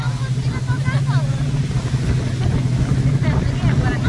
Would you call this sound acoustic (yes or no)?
yes